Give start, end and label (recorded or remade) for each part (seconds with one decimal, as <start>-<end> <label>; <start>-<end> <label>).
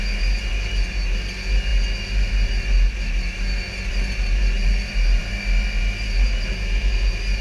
0.0-7.4 recorded